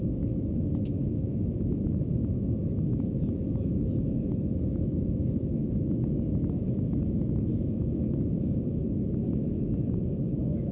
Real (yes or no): no